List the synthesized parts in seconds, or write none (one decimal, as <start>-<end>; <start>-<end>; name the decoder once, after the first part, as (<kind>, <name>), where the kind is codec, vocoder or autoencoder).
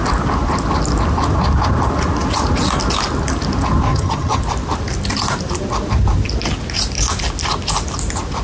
3.9-4.4 (vocoder, HiFi-GAN)